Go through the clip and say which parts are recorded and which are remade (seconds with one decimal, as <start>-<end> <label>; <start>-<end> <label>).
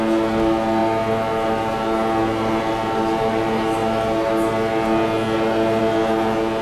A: 0.0-6.6 recorded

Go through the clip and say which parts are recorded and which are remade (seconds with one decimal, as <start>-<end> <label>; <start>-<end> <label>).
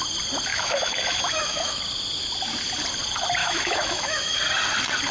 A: 0.0-0.5 recorded; 0.5-1.8 remade; 1.8-3.4 recorded; 3.4-4.4 remade; 4.4-5.1 recorded